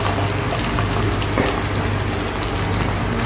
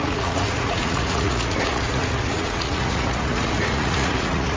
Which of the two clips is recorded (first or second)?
first